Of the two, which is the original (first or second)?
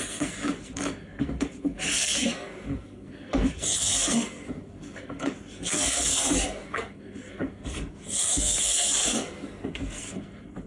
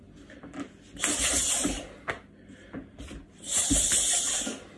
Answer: second